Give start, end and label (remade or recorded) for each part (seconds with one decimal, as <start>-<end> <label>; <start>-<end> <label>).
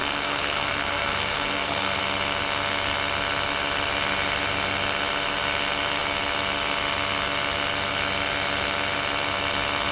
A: 0.0-2.0 remade; 2.0-9.9 recorded